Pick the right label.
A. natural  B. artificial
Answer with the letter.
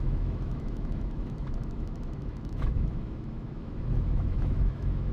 B